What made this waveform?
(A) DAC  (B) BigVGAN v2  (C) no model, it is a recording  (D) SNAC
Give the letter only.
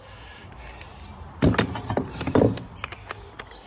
C